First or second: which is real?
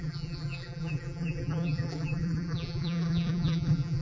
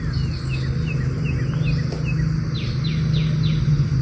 second